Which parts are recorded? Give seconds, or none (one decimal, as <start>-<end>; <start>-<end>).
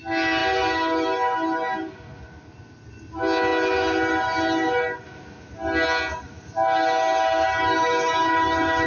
0.0-8.9